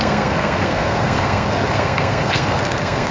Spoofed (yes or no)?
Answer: yes